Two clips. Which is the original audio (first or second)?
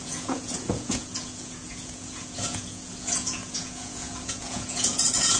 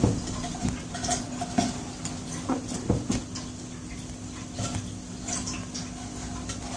second